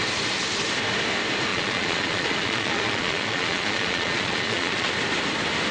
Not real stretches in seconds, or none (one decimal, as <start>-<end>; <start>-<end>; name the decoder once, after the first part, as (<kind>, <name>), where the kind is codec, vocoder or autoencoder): 1.5-4.9 (vocoder, Vocos)